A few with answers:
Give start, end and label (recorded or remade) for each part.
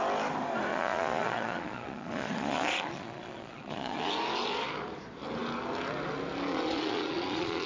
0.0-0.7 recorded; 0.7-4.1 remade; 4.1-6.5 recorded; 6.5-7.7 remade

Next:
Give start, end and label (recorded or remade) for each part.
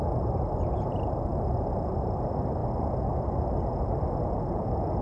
0.0-5.0 recorded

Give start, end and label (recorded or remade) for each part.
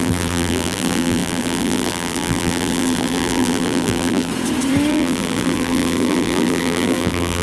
0.0-4.3 remade; 4.3-4.9 recorded; 4.9-7.4 remade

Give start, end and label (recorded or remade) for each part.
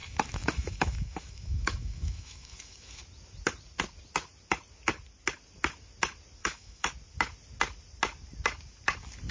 0.0-3.0 remade; 3.0-6.4 recorded; 6.4-6.9 remade; 6.9-9.3 recorded